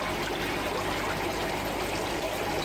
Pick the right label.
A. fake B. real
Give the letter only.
B